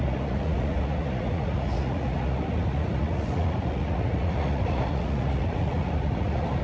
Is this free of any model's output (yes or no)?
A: no